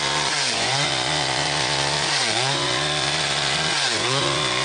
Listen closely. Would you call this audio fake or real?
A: fake